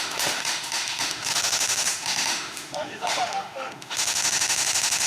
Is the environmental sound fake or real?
fake